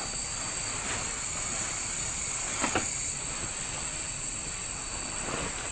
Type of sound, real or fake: real